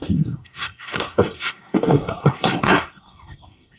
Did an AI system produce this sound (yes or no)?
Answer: yes